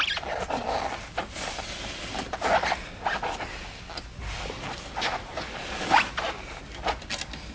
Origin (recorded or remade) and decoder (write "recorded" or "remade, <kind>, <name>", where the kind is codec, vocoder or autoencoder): recorded